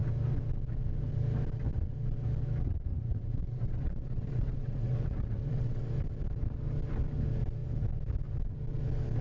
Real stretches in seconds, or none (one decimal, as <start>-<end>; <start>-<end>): 0.0-2.9; 5.9-9.2